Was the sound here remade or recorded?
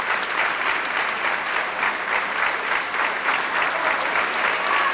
recorded